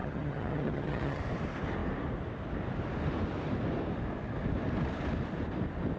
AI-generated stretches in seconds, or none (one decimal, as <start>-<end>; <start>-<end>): 0.0-1.2